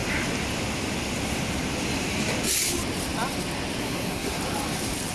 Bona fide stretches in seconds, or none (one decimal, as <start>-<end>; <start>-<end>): 0.0-3.8; 4.4-5.1